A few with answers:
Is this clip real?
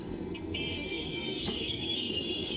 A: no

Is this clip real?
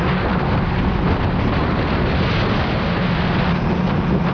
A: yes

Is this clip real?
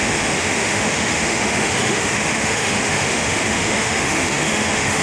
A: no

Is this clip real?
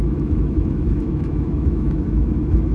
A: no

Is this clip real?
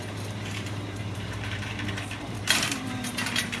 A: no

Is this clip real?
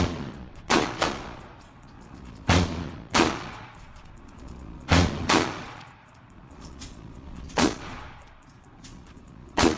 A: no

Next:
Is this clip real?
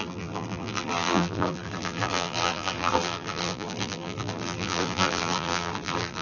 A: no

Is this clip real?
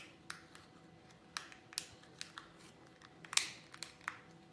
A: yes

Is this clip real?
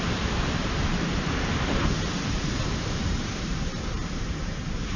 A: no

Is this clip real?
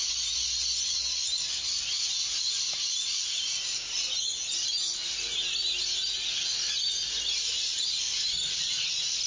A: yes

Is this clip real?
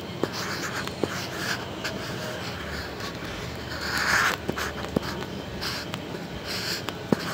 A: yes